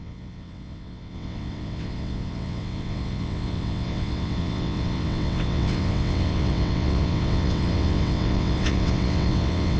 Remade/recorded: remade